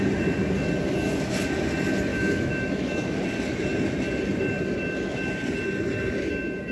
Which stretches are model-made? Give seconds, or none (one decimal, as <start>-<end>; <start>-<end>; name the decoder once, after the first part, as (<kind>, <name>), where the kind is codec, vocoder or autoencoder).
2.1-3.2 (autoencoder, DAC-VAE)